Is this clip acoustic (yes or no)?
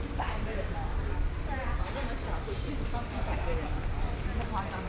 yes